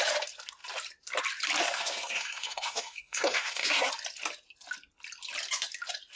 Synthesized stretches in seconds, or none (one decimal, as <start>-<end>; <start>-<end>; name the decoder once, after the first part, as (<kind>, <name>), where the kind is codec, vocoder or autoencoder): 1.6-3.9 (codec, SNAC)